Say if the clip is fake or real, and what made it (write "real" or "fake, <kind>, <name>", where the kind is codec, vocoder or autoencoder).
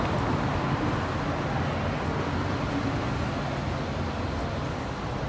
real